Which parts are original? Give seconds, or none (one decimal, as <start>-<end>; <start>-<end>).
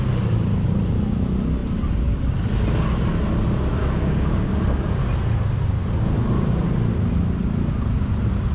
0.0-3.8; 4.6-8.5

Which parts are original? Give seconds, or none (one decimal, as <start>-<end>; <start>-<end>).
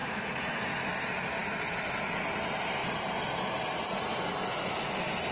0.0-5.3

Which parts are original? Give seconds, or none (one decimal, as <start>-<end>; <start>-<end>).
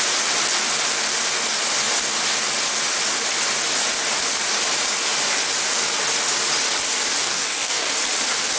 0.0-7.2; 7.9-8.6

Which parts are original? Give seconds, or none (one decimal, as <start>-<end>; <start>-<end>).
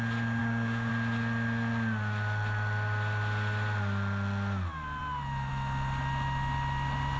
0.0-0.4; 0.9-7.2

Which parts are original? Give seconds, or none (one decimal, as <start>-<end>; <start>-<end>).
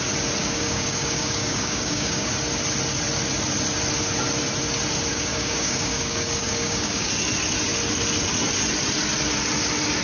0.0-0.4; 2.3-5.1; 7.1-10.0